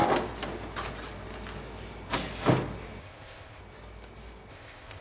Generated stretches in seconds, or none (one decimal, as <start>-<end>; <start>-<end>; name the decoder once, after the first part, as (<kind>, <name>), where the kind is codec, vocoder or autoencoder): 3.0-3.6 (codec, ZipCodec); 4.5-5.0